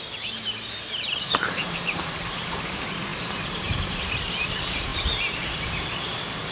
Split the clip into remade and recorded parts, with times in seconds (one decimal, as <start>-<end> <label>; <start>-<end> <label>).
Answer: 0.0-6.5 remade

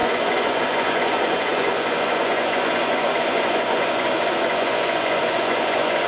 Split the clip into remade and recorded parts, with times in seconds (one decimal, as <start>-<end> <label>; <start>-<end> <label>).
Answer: 0.0-6.1 remade

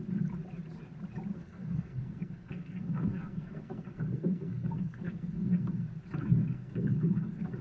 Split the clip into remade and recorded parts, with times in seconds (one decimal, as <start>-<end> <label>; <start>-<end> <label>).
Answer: 0.0-1.3 recorded; 1.3-5.9 remade; 5.9-6.4 recorded; 6.4-7.6 remade